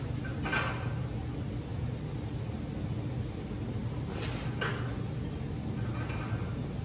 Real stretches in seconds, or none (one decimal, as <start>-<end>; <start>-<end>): 0.0-6.8